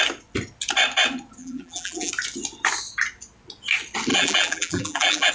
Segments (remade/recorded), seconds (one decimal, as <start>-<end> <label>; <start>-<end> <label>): 0.0-1.4 recorded; 1.4-2.1 remade; 2.1-4.1 recorded; 4.1-5.3 remade